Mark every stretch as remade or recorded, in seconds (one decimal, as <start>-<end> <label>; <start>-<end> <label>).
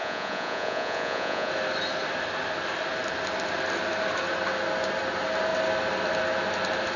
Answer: 0.0-1.5 remade; 1.5-7.0 recorded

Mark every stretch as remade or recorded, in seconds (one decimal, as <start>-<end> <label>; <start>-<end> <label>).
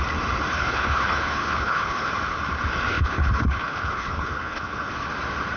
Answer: 0.0-0.5 recorded; 0.5-2.1 remade; 2.1-2.9 recorded; 2.9-4.9 remade; 4.9-5.6 recorded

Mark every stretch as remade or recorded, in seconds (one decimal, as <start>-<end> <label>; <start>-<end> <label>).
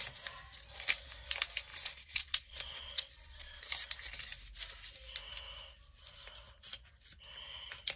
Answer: 0.0-1.7 recorded; 1.7-3.6 remade; 3.6-8.0 recorded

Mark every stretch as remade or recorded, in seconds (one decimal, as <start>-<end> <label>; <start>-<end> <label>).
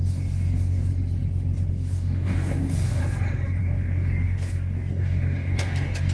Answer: 0.0-0.9 remade; 0.9-1.7 recorded; 1.7-3.0 remade; 3.0-3.6 recorded; 3.6-6.1 remade